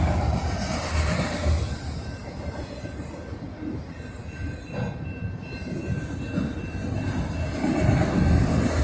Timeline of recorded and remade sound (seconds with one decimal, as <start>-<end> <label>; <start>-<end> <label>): 0.0-8.8 recorded